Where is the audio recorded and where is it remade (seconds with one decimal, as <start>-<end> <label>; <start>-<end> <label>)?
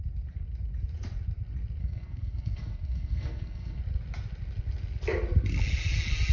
0.0-1.8 recorded; 1.8-3.8 remade; 3.8-6.3 recorded